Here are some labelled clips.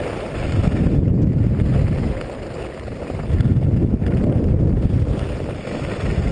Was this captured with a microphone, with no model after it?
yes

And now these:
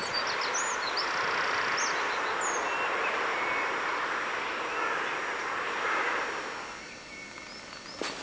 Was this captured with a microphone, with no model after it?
yes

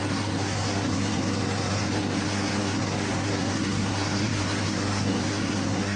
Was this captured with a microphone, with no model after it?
no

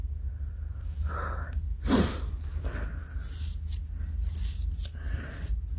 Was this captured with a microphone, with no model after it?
yes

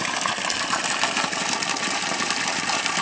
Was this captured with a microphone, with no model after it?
yes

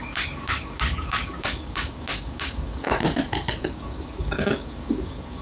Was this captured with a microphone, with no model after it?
no